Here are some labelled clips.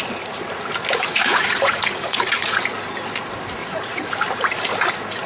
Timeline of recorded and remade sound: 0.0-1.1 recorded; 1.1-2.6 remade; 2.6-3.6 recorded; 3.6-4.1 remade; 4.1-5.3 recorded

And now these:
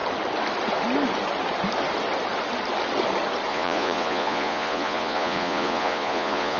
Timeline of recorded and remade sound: 0.0-3.5 recorded; 3.5-6.6 remade

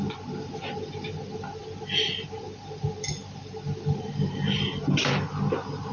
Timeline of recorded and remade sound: 0.0-5.9 recorded

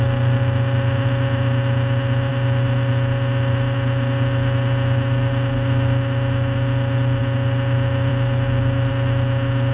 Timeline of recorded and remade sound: 0.0-9.7 recorded

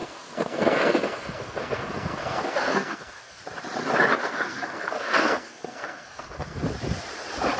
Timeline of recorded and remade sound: 0.0-3.4 remade; 3.4-4.1 recorded; 4.1-6.6 remade; 6.6-7.6 recorded